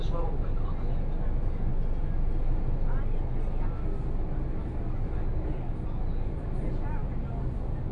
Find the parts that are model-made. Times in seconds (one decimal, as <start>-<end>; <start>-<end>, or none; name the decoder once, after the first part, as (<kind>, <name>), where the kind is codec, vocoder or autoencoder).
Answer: none